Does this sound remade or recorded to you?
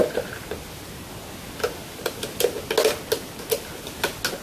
recorded